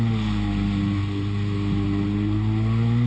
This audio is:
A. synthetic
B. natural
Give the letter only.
B